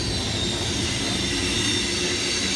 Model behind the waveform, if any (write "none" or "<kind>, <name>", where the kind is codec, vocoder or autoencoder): none